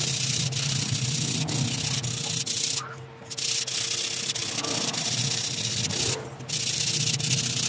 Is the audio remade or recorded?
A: recorded